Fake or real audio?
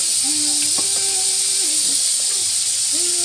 real